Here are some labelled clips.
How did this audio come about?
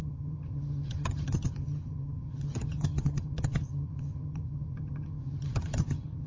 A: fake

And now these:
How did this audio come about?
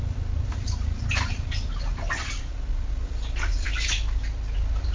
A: real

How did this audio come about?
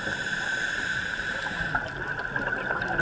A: real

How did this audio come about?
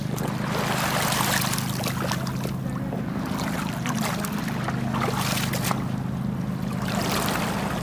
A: real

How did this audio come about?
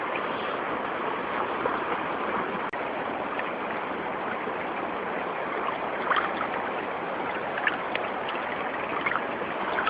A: real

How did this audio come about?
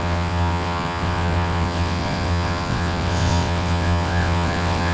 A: fake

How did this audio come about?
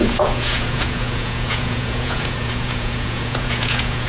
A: fake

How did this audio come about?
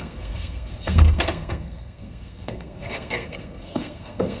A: fake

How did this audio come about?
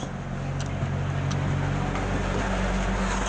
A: real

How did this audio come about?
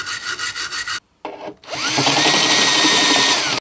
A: real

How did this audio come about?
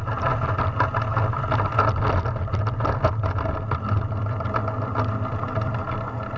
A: real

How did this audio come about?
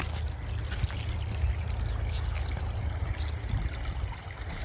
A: real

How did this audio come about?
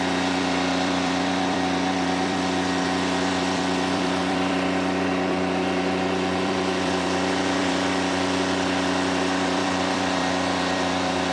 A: fake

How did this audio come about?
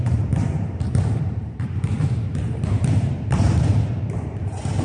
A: fake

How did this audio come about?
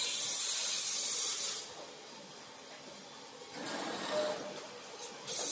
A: real